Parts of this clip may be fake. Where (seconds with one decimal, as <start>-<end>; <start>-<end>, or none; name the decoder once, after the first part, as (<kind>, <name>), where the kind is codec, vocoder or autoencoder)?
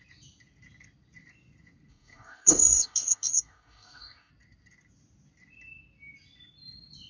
1.9-4.3 (codec, DAC)